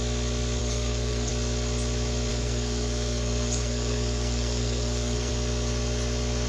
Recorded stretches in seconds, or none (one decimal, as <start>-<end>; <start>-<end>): 0.0-0.6; 1.3-2.3; 5.3-6.5